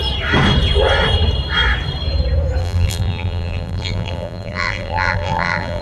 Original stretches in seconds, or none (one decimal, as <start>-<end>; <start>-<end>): 0.0-2.6